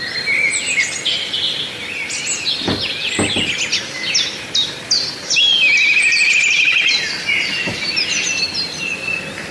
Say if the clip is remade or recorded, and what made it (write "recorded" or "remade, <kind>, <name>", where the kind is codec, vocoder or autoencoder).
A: recorded